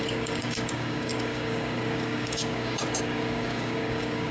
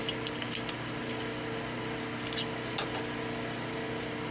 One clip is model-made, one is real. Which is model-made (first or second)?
first